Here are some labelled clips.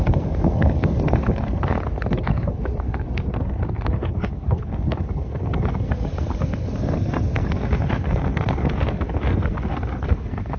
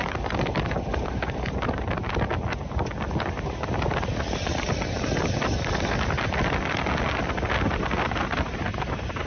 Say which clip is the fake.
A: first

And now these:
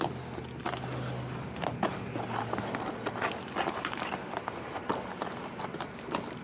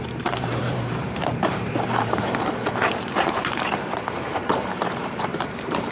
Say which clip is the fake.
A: second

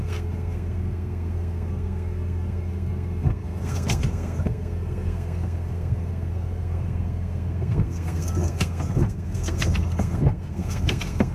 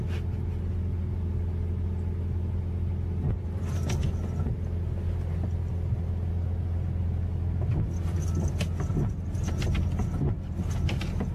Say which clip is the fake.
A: first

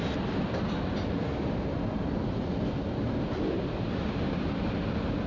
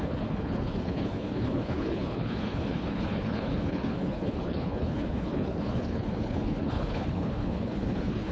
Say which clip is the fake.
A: second